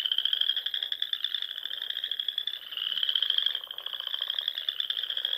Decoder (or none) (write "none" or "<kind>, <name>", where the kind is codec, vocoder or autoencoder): vocoder, BigVGAN v2